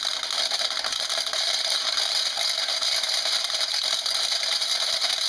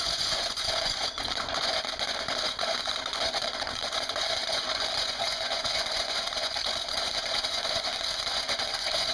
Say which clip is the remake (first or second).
second